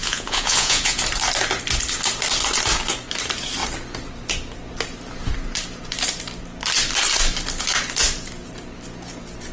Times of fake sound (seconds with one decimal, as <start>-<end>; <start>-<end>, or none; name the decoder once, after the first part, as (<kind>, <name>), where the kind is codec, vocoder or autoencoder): 0.0-1.0 (vocoder, Vocos)